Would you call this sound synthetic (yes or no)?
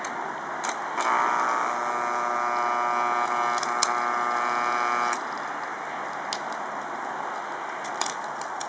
no